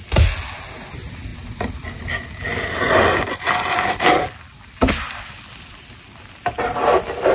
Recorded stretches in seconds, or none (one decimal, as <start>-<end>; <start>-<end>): 0.0-7.3